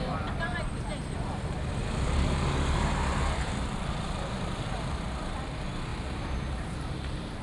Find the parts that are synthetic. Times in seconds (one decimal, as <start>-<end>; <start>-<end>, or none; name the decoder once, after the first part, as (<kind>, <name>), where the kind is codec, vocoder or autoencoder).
1.8-5.0 (vocoder, BigVGAN v2); 5.9-7.4